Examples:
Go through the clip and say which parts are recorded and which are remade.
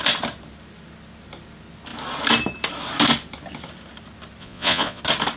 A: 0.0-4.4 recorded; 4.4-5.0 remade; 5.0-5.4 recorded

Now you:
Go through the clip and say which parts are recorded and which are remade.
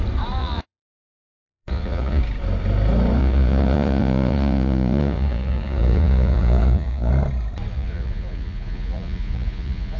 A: 0.0-0.4 recorded; 0.4-2.2 remade; 2.2-3.2 recorded; 3.2-7.1 remade; 7.1-7.7 recorded; 7.7-10.0 remade